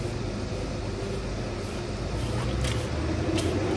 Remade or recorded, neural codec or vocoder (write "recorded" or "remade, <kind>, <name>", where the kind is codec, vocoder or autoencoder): recorded